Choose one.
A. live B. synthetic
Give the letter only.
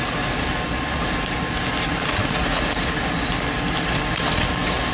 A